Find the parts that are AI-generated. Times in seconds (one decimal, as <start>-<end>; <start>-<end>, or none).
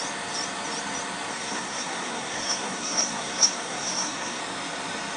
1.3-4.4